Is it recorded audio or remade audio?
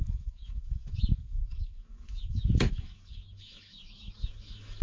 remade